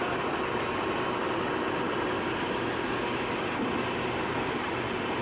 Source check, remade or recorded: recorded